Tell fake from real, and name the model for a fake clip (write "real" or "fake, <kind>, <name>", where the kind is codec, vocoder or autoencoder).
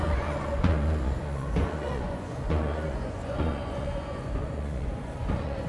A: fake, vocoder, Vocos